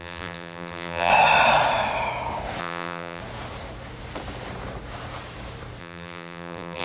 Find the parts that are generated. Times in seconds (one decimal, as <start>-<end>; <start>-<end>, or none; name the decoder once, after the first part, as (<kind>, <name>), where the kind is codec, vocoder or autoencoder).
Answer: 0.0-1.1 (vocoder, BigVGAN v2); 2.6-3.2; 5.8-6.8